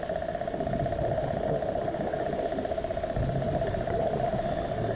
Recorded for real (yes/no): yes